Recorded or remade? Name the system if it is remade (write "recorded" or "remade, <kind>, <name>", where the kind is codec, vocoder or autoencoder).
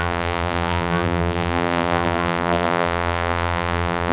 remade, vocoder, BigVGAN v2